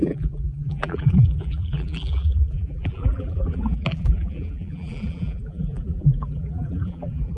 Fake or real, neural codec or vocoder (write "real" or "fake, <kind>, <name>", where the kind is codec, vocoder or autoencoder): fake, vocoder, BigVGAN v2